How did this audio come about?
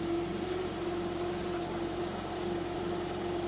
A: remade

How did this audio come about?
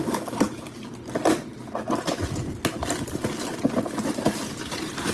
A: recorded